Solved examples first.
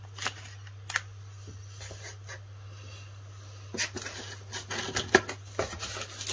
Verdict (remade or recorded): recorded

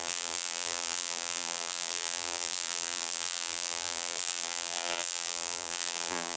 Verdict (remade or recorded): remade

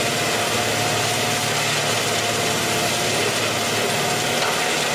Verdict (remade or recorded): recorded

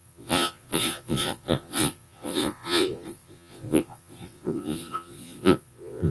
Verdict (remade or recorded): remade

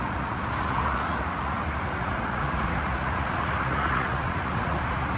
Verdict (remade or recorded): remade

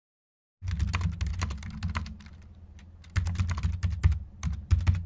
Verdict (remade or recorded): recorded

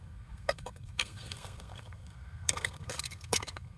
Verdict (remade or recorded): remade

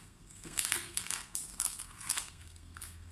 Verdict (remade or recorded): remade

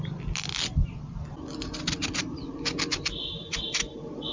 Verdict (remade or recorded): recorded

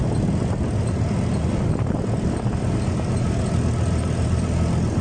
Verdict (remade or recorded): recorded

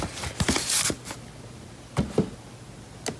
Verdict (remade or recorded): recorded